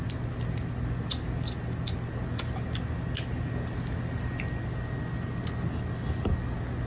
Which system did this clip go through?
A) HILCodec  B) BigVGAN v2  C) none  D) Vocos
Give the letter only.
C